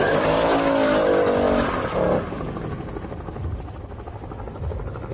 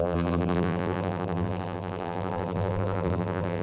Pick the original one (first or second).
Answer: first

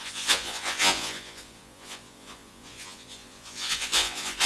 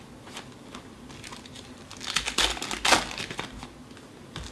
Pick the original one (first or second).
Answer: second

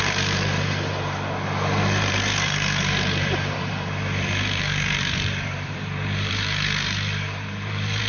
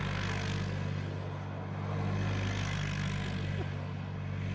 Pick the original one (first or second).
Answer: second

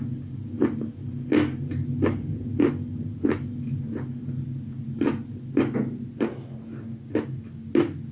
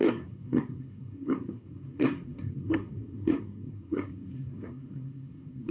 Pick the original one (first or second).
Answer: first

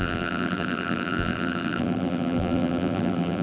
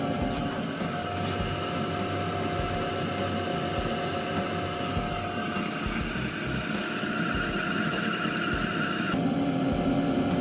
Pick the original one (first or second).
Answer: second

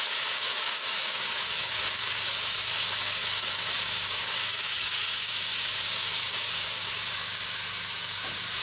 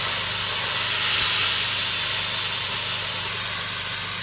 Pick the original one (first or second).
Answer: second